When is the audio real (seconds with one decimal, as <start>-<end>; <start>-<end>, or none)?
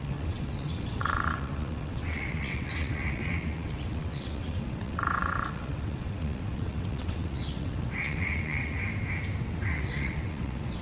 8.8-9.4